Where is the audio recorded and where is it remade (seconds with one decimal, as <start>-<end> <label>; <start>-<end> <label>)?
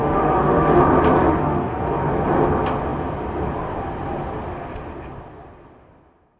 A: 0.0-0.8 remade; 0.8-1.3 recorded; 1.3-2.1 remade; 2.1-6.4 recorded